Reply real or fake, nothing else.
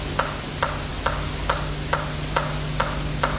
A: real